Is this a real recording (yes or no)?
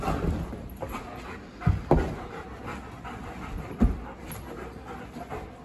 yes